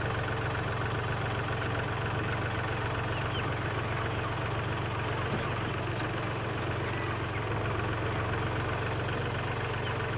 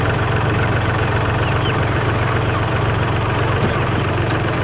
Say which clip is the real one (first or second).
first